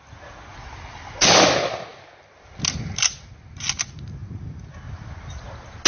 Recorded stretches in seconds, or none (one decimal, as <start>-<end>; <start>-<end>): 0.0-0.5; 1.3-1.9; 3.3-5.9